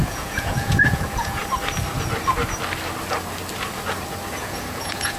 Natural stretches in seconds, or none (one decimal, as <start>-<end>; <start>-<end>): 1.4-4.4

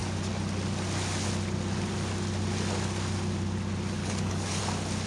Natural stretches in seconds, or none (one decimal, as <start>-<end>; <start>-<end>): 0.0-4.0; 4.6-5.1

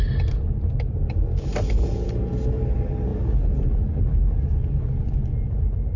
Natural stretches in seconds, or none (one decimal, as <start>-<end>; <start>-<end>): 0.0-6.0

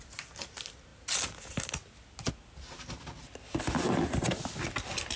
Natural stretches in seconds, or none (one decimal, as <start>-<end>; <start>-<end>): 0.0-5.2